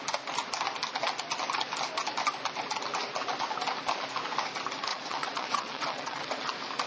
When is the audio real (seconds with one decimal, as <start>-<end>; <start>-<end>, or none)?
0.0-4.9; 6.3-6.9